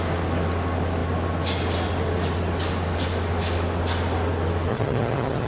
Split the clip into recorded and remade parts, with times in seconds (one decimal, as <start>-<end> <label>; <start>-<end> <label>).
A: 0.0-4.7 recorded; 4.7-5.5 remade